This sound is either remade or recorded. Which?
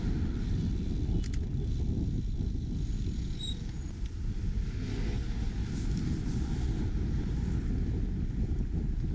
recorded